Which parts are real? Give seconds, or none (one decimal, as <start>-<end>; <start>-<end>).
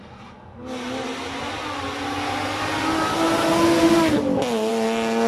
0.0-5.3